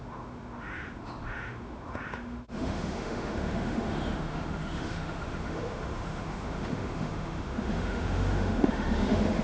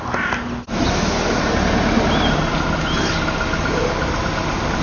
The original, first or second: second